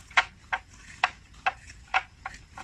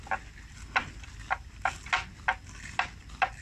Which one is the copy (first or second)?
first